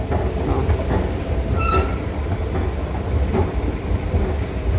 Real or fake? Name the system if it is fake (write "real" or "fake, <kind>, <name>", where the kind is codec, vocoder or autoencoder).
real